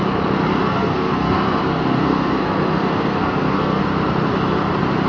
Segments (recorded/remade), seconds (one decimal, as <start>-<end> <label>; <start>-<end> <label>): 0.0-0.7 recorded; 0.7-3.8 remade; 3.8-5.1 recorded